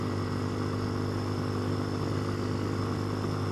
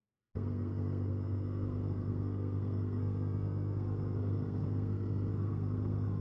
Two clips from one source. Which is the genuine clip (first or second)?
first